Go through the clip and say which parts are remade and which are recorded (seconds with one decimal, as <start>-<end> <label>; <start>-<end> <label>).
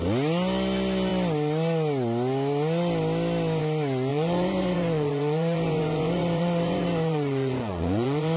0.0-4.1 recorded; 4.1-8.4 remade